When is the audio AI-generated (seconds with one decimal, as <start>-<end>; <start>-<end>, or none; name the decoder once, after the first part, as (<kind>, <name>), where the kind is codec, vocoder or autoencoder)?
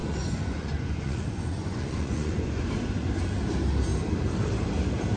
0.0-2.7 (vocoder, Vocos)